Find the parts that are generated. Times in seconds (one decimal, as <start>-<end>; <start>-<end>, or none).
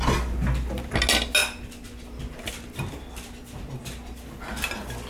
none